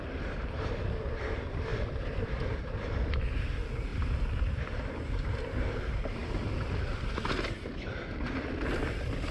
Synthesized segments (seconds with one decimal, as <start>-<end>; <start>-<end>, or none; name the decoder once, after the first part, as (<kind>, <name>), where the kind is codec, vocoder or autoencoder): 1.7-2.6 (vocoder, BigVGAN v2)